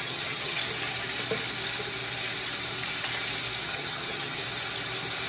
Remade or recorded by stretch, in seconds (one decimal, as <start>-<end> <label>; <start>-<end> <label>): 0.0-0.6 remade; 0.6-3.6 recorded; 3.6-4.4 remade; 4.4-5.3 recorded